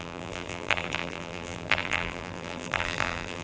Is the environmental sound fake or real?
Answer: fake